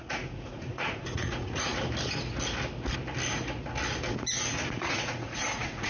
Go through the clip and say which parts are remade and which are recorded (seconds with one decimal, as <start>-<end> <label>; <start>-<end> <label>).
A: 0.0-1.7 remade; 1.7-4.8 recorded; 4.8-5.9 remade